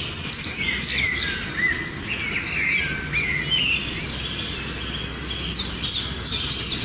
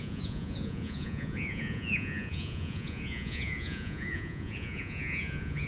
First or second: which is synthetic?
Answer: second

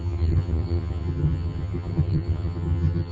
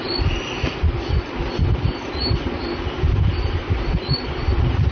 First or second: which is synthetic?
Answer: first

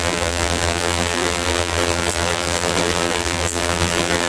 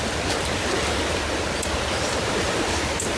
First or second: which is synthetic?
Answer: first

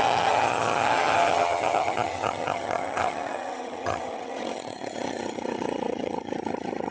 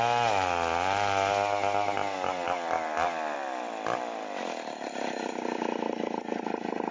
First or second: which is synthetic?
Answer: first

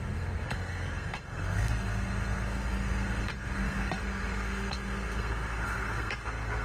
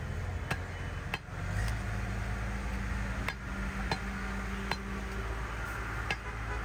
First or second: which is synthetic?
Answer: first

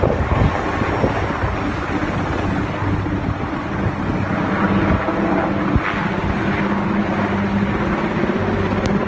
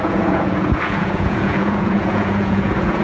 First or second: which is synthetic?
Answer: second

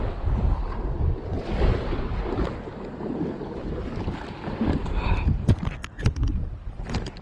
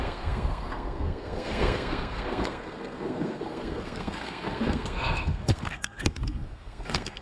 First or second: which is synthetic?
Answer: second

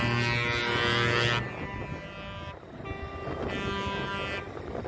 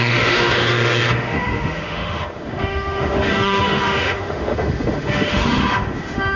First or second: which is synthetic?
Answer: second